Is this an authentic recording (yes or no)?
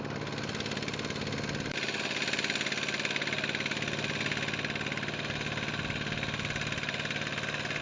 yes